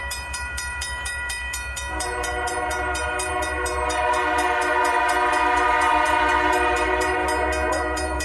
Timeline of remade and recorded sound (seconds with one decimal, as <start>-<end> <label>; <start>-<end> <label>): 0.0-7.2 remade; 7.2-7.7 recorded; 7.7-8.2 remade